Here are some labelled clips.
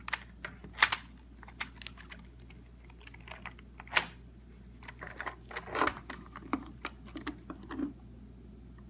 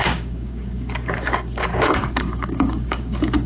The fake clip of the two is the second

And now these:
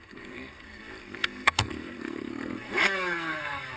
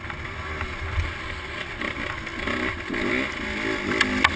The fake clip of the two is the first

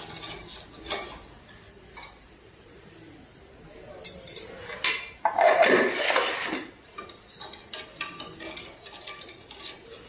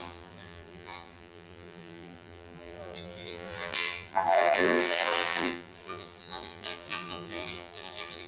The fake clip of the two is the second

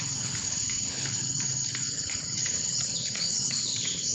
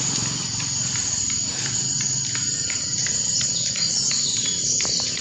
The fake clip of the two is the first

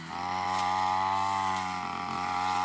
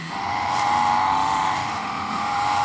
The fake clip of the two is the second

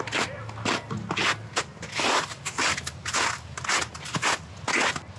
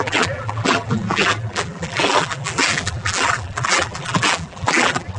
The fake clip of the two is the second